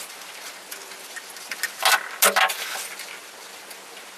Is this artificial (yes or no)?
no